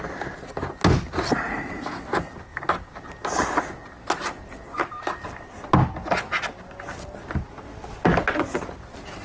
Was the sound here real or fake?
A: real